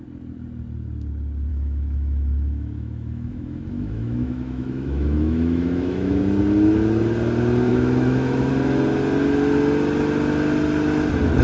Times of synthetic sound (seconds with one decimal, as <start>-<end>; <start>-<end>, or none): 1.5-6.2; 7.7-8.5